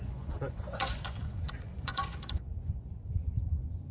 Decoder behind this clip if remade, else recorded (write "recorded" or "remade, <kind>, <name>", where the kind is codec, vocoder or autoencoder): remade, vocoder, Vocos